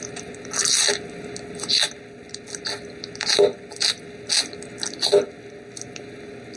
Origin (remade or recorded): recorded